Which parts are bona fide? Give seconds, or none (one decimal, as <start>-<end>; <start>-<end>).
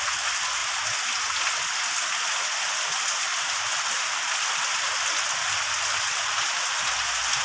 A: 0.0-7.4